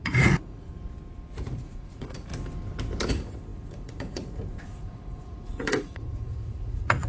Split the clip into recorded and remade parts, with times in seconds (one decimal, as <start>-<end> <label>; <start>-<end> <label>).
0.0-0.7 remade; 0.7-1.4 recorded; 1.4-2.3 remade; 2.3-3.1 recorded; 3.1-7.1 remade

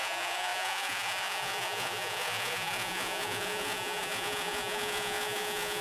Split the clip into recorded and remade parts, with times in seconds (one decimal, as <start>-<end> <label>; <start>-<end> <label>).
0.0-5.8 remade

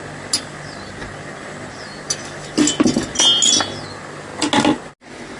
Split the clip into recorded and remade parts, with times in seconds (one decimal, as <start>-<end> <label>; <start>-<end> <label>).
0.0-5.4 recorded